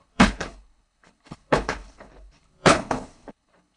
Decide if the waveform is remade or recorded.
remade